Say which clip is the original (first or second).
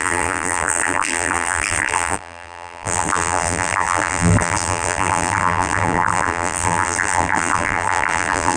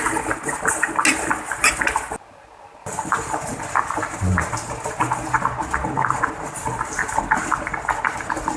second